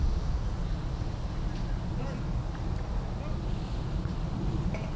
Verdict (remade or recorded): recorded